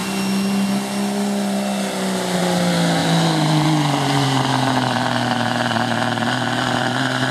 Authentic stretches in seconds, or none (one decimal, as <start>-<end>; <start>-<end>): 0.0-3.0